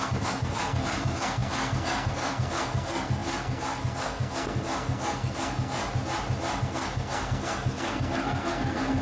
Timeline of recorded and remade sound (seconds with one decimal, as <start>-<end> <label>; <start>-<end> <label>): 0.0-5.8 remade; 5.8-6.6 recorded; 6.6-9.0 remade